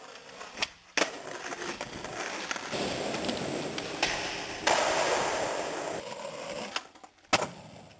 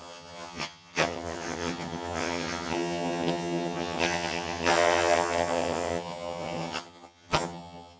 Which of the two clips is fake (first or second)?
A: second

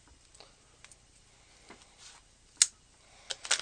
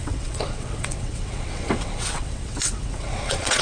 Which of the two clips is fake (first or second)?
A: second